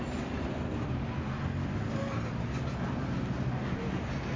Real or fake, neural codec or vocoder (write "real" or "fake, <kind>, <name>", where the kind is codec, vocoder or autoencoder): real